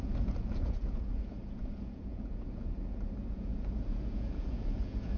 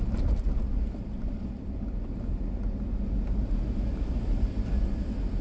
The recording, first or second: second